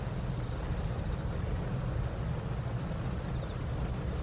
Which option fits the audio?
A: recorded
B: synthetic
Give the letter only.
A